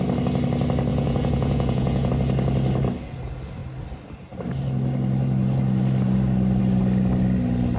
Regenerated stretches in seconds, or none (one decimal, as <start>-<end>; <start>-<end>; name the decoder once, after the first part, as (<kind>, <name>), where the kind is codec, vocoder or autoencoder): 0.9-2.1 (vocoder, Vocos)